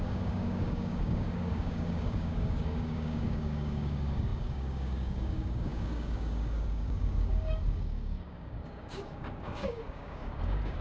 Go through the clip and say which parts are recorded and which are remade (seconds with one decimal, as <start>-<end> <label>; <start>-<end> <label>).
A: 0.0-10.8 remade